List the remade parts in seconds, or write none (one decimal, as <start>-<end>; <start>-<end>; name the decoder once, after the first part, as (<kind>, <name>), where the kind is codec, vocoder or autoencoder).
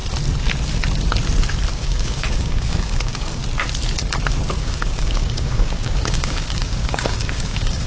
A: 1.7-3.4 (codec, DAC); 4.6-7.9